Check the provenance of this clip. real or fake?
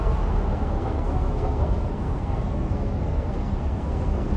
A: fake